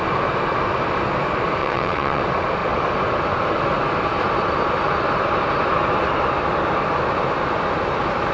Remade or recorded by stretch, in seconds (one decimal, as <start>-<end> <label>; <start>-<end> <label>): 0.0-1.6 recorded; 1.6-2.2 remade; 2.2-8.3 recorded

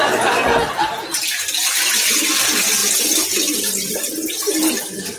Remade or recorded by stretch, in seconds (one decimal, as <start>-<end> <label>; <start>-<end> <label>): 0.0-5.2 recorded

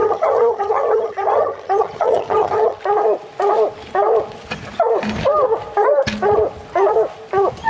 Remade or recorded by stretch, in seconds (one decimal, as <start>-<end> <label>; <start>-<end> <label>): 0.0-2.8 remade; 2.8-7.7 recorded

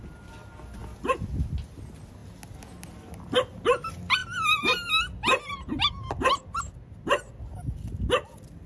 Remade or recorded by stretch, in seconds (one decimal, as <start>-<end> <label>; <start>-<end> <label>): 0.0-8.7 recorded